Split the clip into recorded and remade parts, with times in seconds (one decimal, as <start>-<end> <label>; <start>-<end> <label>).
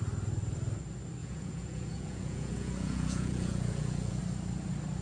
0.0-1.2 recorded; 1.2-4.2 remade; 4.2-5.0 recorded